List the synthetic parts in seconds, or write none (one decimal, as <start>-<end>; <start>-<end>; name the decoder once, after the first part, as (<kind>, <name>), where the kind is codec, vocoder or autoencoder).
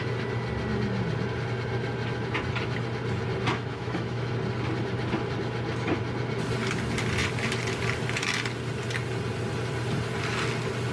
3.5-4.3 (autoencoder, DAC-VAE)